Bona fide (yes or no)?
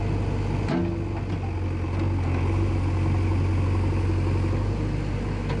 yes